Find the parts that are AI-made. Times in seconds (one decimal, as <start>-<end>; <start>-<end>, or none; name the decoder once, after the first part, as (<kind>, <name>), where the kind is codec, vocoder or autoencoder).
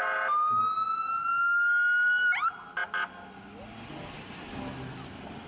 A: none